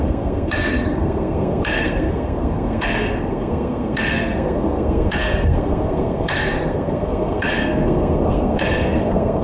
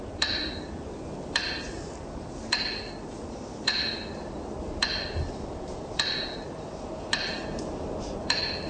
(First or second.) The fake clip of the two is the first